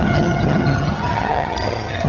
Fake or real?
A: fake